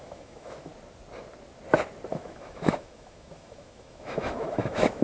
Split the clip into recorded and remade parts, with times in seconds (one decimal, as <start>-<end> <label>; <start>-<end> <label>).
0.0-0.7 remade; 0.7-2.1 recorded; 2.1-5.0 remade